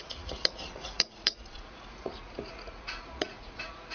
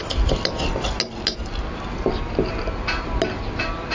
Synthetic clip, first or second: first